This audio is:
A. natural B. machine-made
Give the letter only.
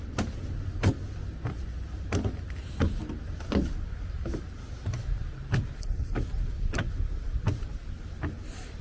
A